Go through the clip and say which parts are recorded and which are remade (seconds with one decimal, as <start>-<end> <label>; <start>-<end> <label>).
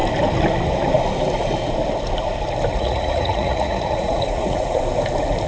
0.0-2.7 recorded; 2.7-4.8 remade; 4.8-5.5 recorded